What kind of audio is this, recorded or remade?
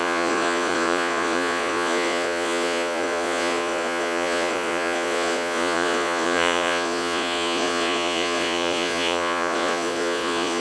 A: remade